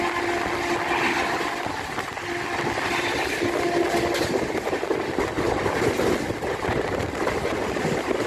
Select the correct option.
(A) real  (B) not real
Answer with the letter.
A